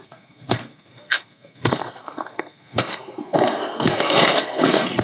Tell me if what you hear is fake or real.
fake